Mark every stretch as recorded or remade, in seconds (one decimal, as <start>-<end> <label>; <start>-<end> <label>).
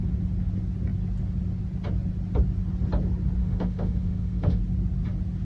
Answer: 0.0-3.4 recorded; 3.4-4.6 remade; 4.6-5.4 recorded